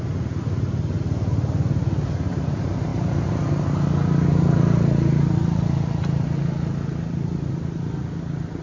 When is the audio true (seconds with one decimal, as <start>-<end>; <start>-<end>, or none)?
0.0-8.6